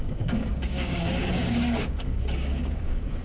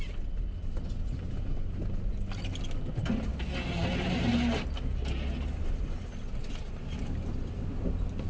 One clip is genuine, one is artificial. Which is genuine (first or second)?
second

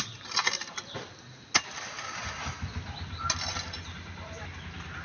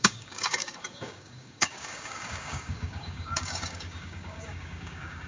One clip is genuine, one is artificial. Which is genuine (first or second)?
first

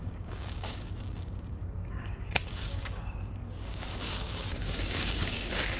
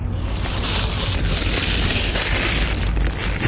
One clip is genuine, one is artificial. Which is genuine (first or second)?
second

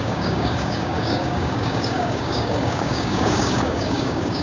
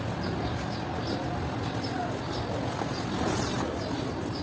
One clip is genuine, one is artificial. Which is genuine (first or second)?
second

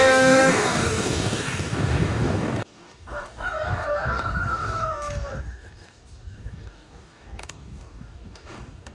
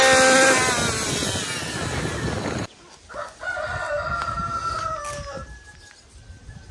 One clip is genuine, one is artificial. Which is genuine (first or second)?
second